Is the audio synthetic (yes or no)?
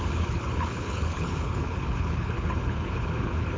yes